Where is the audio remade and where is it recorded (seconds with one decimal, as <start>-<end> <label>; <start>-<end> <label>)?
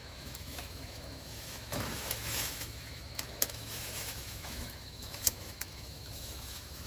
0.0-6.9 remade